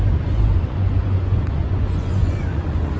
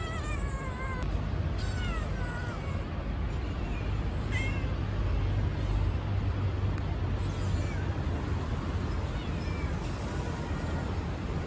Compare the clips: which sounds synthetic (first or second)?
first